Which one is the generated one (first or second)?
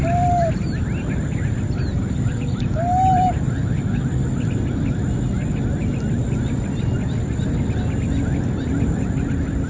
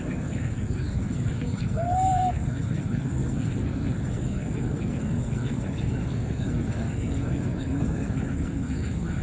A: second